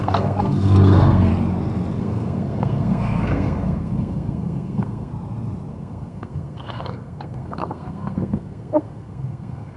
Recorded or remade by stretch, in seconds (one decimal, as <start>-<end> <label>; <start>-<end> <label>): 0.0-1.3 remade; 1.3-2.0 recorded; 2.0-5.1 remade; 5.1-5.7 recorded; 5.7-9.8 remade